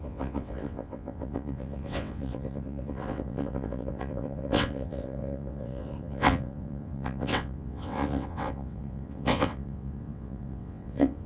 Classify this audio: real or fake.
fake